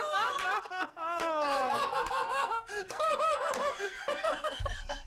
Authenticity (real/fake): fake